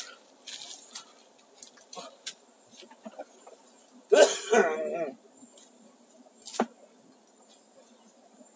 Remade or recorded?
recorded